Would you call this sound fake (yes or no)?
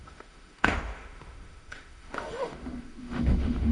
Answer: yes